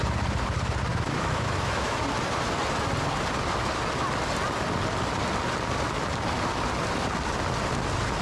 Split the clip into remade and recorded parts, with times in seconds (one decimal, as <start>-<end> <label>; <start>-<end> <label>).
0.0-0.9 recorded; 0.9-2.0 remade; 2.0-8.2 recorded